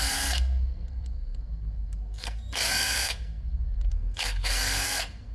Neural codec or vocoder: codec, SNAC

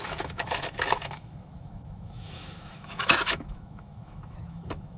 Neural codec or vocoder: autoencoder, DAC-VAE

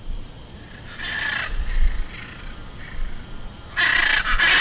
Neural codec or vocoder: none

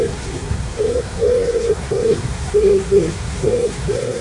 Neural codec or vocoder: codec, SNAC